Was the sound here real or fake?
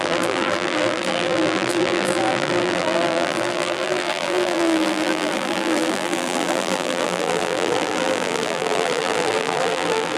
fake